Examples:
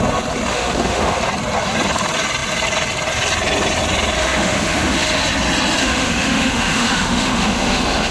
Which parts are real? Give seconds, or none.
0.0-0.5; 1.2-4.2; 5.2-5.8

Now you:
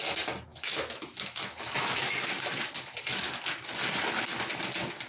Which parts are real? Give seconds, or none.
0.0-0.5; 2.1-5.1

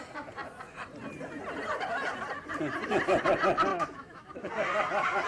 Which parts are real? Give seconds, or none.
0.0-3.7; 4.5-5.3

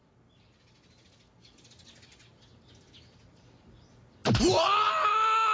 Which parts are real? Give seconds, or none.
0.0-5.5

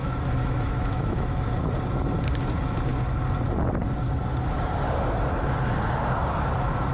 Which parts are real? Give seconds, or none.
1.5-6.9